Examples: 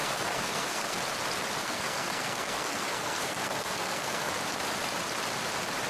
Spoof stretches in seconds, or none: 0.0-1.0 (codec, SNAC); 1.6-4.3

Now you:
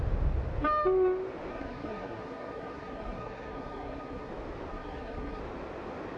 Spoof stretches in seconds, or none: 1.5-4.3 (codec, SNAC); 4.7-5.4

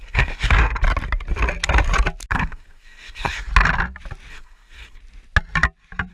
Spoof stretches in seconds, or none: 0.0-0.8 (codec, SNAC); 2.3-3.5; 4.3-5.0

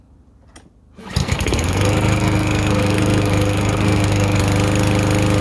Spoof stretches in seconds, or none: 1.2-4.4 (codec, SNAC)